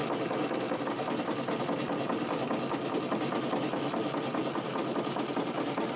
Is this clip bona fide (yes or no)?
yes